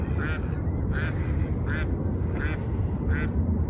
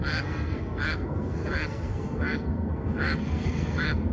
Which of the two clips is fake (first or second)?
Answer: second